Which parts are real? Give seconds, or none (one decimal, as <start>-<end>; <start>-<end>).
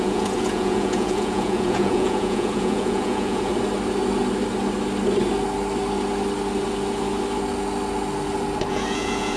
3.5-8.7